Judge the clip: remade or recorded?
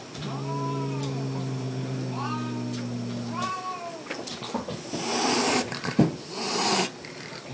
recorded